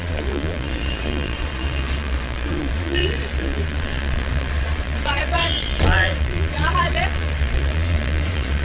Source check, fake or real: fake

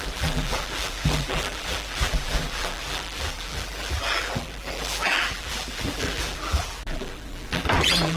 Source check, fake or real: fake